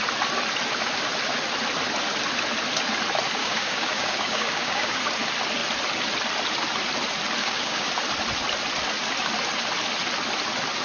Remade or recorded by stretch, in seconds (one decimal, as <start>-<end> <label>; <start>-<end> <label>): 0.0-3.4 recorded; 3.4-5.0 remade; 5.0-7.4 recorded; 7.4-7.9 remade; 7.9-10.8 recorded